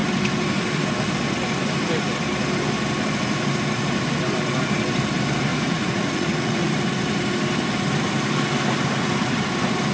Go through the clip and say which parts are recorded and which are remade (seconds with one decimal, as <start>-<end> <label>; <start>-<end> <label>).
0.0-5.5 recorded; 5.5-6.7 remade; 6.7-9.9 recorded